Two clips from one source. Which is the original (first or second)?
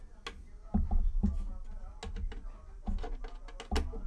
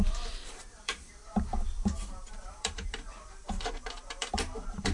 first